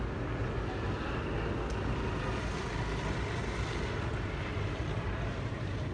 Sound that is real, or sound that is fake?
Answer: real